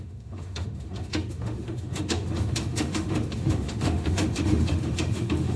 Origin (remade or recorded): remade